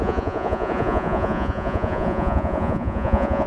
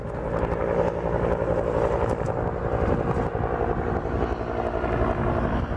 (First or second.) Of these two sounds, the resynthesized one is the first